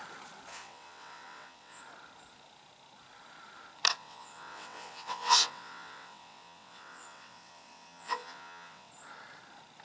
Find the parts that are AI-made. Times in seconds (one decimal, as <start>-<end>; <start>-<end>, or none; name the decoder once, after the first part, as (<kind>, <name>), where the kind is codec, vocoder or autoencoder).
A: 0.5-1.8 (vocoder, WaveNeXt); 3.9-8.9

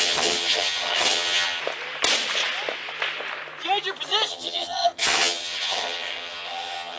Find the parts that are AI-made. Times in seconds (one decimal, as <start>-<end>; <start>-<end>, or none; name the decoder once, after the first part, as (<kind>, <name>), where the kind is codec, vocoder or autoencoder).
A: 0.0-1.6 (vocoder, HiFi-GAN); 4.3-7.0

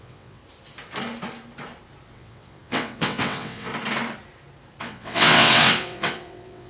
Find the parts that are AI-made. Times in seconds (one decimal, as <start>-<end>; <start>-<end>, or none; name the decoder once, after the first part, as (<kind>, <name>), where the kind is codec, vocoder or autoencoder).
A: 0.0-0.4 (vocoder, WaveNeXt); 2.1-3.7; 4.8-6.7

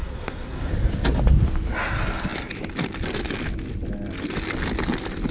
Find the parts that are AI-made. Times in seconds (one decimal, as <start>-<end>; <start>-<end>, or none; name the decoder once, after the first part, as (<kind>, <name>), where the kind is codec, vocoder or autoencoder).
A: 0.0-0.7 (codec, SNAC)

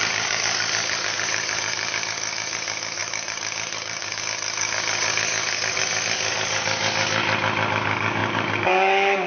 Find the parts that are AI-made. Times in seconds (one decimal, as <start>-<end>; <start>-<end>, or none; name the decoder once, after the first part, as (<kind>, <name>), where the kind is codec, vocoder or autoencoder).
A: 0.0-7.2 (codec, DAC); 7.7-9.3

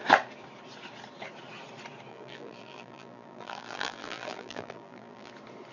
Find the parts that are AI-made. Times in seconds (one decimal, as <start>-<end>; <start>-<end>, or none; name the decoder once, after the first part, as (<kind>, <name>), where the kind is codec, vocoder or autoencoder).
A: 2.1-5.3 (vocoder, BigVGAN v2)

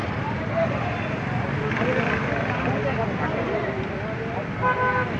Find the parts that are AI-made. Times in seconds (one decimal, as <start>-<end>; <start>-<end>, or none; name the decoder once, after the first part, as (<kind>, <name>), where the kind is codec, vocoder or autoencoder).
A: 0.0-0.6 (vocoder, BigVGAN v2)